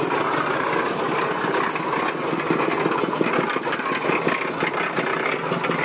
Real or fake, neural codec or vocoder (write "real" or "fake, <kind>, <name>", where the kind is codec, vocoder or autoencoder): real